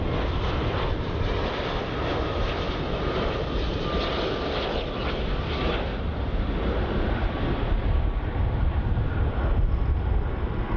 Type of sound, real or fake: real